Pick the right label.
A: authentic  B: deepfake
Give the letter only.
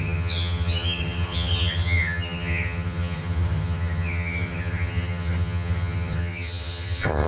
B